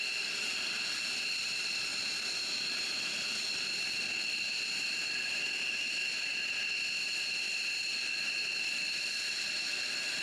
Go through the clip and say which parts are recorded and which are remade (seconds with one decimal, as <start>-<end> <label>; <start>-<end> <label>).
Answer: 0.0-1.9 remade; 1.9-2.8 recorded; 2.8-6.3 remade; 6.3-8.0 recorded; 8.0-10.2 remade